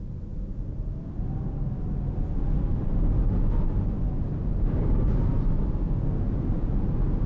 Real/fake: real